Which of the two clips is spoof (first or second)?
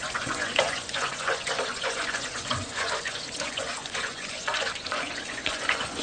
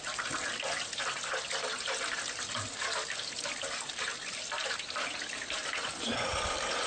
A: first